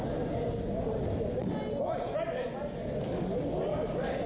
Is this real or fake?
real